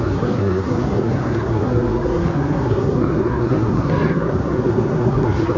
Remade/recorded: remade